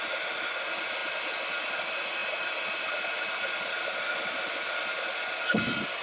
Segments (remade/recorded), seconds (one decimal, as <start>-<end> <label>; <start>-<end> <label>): 0.0-6.0 recorded